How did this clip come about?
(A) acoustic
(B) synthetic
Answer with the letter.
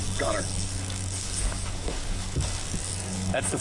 B